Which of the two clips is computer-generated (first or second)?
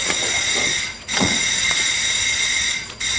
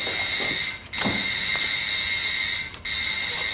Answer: first